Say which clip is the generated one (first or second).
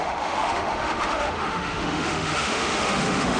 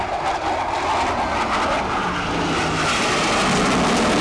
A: first